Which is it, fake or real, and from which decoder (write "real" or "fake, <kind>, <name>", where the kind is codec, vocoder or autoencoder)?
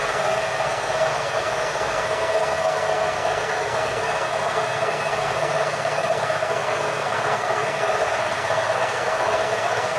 fake, codec, SNAC